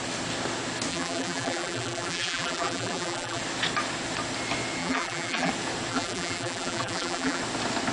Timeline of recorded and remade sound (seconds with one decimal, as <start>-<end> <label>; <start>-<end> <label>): 0.0-0.9 recorded; 0.9-3.4 remade; 3.4-4.8 recorded; 4.8-5.5 remade; 5.5-5.9 recorded; 5.9-7.4 remade; 7.4-7.9 recorded